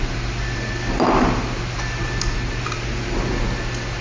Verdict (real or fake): real